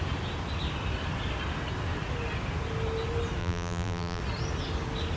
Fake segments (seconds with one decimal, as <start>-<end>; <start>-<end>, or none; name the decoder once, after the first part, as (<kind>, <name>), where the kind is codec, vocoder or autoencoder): 3.4-4.2 (vocoder, BigVGAN v2)